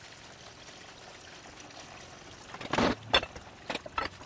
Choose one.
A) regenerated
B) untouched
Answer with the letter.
B